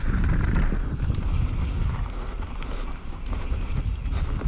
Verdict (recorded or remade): recorded